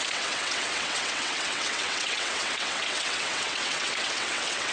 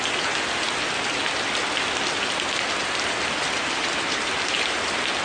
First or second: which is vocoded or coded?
first